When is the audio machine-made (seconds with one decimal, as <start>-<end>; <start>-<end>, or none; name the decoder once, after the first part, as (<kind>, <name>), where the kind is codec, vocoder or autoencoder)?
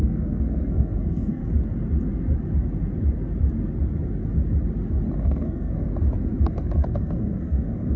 0.0-1.4 (codec, SNAC); 5.2-5.9; 6.4-8.0